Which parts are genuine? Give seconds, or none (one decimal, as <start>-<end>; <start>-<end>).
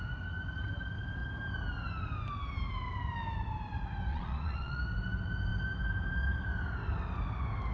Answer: 0.0-4.1; 4.8-7.7